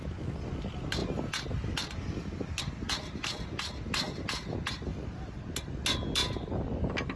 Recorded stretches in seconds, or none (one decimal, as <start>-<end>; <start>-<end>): 0.0-7.2